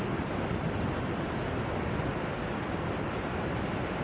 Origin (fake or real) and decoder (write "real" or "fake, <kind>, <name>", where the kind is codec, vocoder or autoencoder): real